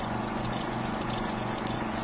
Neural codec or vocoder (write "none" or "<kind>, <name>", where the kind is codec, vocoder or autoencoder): vocoder, Vocos